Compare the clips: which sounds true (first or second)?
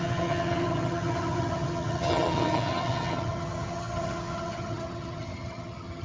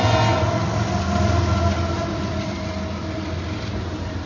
second